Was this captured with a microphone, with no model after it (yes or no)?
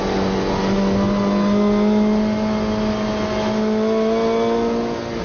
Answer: yes